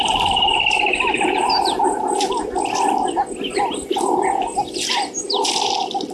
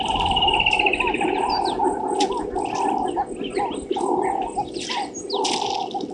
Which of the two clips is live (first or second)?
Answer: second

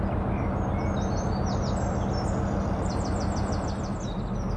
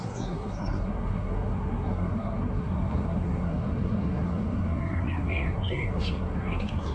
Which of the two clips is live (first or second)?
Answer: first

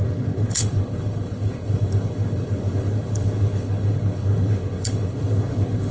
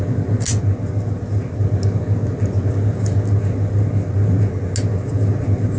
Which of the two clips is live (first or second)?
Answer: second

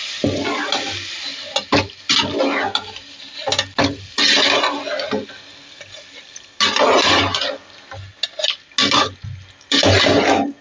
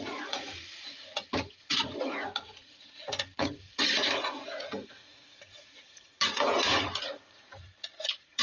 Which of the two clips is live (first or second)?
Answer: first